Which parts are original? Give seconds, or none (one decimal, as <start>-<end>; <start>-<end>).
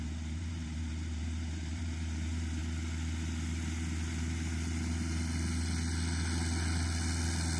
2.6-7.6